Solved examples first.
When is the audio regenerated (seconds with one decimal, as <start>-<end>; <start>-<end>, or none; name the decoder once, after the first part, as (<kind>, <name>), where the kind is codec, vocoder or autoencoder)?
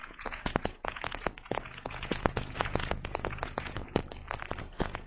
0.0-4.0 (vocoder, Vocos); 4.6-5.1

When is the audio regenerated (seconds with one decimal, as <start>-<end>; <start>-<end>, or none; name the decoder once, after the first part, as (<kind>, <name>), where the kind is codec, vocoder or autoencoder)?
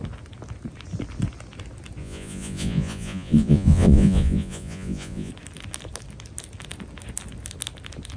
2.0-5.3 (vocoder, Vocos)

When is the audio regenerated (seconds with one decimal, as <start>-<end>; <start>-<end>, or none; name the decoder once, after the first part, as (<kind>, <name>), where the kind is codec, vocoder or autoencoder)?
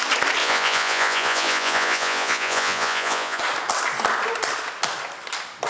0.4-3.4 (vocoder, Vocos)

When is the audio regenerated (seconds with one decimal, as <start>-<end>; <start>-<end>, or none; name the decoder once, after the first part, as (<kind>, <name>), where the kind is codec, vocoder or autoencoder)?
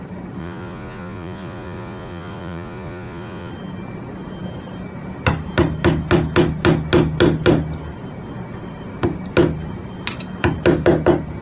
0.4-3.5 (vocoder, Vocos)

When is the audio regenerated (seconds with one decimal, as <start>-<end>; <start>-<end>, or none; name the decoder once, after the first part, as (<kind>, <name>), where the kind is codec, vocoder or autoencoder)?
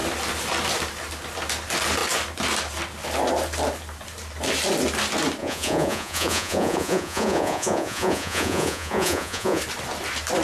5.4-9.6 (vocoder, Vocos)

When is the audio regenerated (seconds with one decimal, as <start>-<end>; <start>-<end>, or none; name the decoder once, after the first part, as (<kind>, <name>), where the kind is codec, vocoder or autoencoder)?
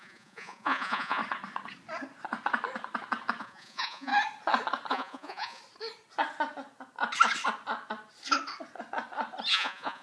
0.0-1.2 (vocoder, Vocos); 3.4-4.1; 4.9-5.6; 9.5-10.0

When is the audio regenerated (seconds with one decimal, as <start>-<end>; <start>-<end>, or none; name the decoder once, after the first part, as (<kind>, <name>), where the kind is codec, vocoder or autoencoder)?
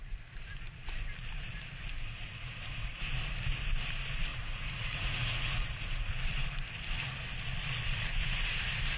1.9-3.0 (vocoder, Vocos); 4.3-6.1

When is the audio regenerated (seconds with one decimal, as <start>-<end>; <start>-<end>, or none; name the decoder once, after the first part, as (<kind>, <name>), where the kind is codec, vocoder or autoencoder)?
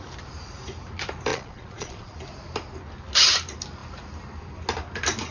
1.3-2.2 (vocoder, Vocos)